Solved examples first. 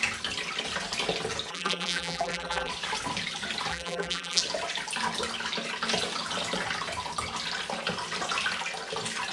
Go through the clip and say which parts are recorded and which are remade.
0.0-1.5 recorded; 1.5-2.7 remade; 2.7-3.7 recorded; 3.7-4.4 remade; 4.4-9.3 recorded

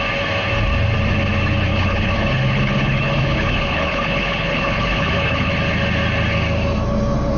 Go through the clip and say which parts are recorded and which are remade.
0.0-1.7 recorded; 1.7-5.5 remade; 5.5-7.4 recorded

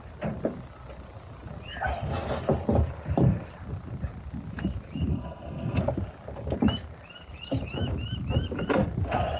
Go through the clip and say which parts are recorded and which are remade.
0.0-5.1 recorded; 5.1-5.8 remade; 5.8-9.4 recorded

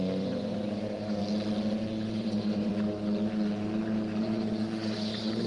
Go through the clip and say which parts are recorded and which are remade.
0.0-1.2 remade; 1.2-1.9 recorded; 1.9-2.7 remade; 2.7-4.2 recorded; 4.2-5.5 remade